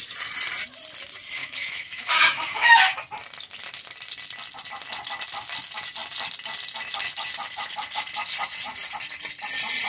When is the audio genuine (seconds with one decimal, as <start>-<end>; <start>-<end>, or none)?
0.0-1.4; 3.0-9.9